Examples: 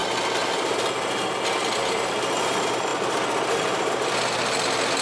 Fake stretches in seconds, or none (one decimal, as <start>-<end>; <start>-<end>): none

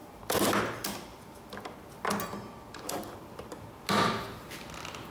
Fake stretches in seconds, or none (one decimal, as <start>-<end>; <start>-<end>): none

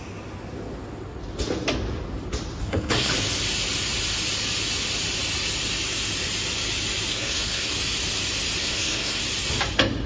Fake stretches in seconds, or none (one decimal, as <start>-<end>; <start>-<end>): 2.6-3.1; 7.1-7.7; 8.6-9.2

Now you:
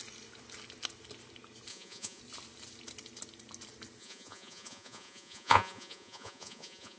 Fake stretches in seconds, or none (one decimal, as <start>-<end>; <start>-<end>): 1.7-2.2; 4.0-7.0

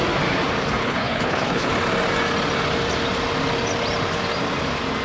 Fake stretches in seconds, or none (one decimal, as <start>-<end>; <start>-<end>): 0.8-1.7

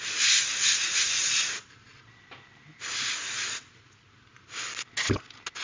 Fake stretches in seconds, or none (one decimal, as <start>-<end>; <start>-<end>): none

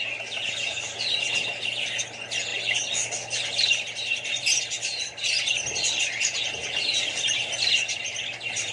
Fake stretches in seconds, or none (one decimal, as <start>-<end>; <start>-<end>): none